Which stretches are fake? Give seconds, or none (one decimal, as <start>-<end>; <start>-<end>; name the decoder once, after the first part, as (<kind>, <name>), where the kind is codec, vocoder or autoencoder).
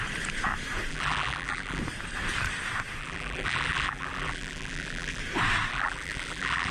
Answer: 0.9-1.8 (vocoder, BigVGAN v2); 3.0-5.2; 5.7-6.7